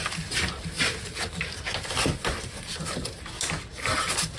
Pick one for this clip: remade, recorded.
recorded